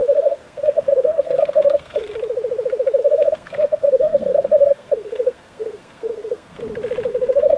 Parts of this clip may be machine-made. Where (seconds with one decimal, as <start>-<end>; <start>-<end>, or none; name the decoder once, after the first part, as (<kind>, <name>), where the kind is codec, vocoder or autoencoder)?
0.0-2.1 (codec, SNAC); 3.0-6.6; 7.1-7.6